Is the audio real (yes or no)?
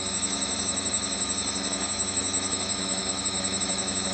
no